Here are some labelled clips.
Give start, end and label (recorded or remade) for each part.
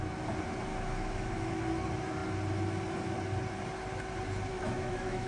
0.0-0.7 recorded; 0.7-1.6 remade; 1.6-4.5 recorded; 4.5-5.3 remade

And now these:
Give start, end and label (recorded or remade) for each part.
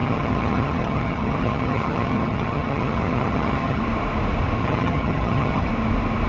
0.0-3.8 remade; 3.8-4.6 recorded; 4.6-5.7 remade; 5.7-6.3 recorded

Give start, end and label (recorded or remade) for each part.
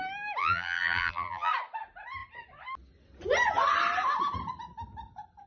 0.0-0.4 recorded; 0.4-1.5 remade; 1.5-5.5 recorded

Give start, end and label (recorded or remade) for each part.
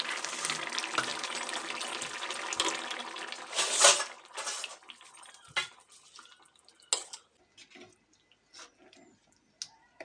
0.0-10.0 recorded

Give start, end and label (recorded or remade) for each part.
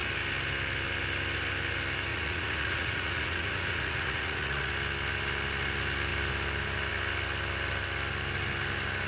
0.0-2.1 recorded; 2.1-4.7 remade; 4.7-9.1 recorded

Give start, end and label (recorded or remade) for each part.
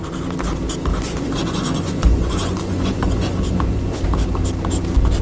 0.0-0.9 recorded; 0.9-4.0 remade; 4.0-5.2 recorded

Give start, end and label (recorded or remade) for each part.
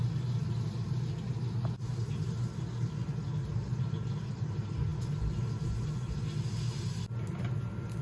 0.0-8.0 recorded